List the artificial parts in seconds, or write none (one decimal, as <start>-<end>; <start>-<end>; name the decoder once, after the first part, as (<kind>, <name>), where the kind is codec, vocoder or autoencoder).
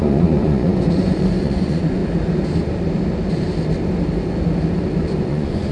0.0-2.0 (vocoder, Vocos); 5.0-5.7